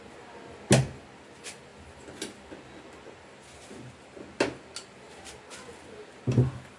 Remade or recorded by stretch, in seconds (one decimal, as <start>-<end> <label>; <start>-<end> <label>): 0.0-6.8 recorded